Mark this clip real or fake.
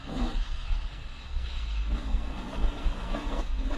fake